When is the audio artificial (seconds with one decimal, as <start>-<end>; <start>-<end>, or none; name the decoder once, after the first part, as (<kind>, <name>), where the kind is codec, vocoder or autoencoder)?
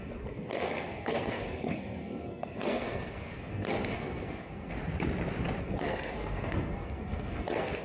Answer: 0.0-4.7 (codec, SNAC); 5.6-7.8